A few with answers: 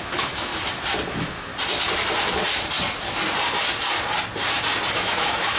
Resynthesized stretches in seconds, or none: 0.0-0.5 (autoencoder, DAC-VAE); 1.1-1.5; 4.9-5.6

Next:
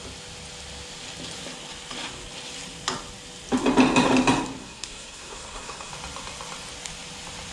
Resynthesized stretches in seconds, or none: 4.6-5.9 (codec, SNAC)